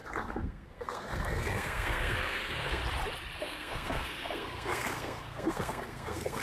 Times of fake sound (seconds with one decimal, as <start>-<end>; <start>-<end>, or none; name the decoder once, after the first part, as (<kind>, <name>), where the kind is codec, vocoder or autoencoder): 0.0-2.8 (codec, SNAC); 3.4-6.4